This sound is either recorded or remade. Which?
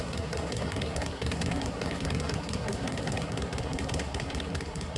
remade